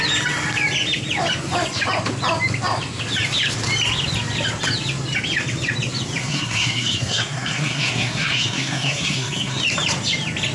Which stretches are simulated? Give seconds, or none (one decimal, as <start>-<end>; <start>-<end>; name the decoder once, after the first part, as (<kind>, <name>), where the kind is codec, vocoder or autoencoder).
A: 6.2-9.6 (codec, SNAC)